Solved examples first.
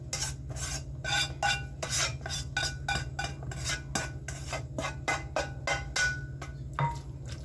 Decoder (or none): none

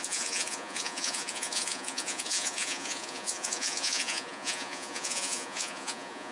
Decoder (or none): vocoder, Vocos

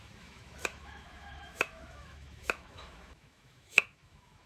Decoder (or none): autoencoder, DAC-VAE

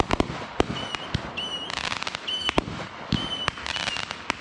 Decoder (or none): none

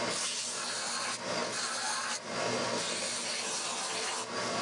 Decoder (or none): none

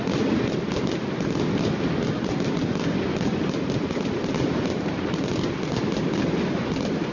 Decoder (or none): none